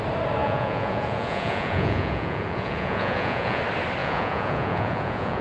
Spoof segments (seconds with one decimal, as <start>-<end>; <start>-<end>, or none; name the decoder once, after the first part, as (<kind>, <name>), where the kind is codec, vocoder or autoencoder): 0.4-3.6 (vocoder, Vocos); 4.0-5.4